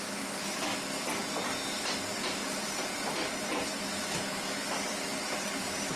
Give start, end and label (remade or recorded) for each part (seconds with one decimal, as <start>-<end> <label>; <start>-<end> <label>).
0.0-0.7 remade; 0.7-3.8 recorded; 3.8-5.1 remade; 5.1-5.6 recorded; 5.6-6.0 remade